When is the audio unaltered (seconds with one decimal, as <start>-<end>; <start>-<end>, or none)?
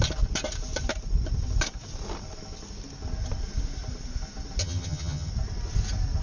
0.0-4.6; 5.3-6.2